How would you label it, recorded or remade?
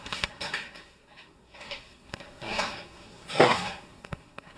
remade